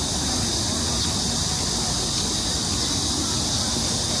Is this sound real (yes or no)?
yes